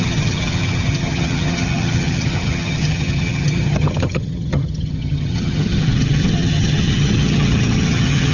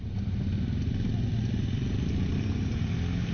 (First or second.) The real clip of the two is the second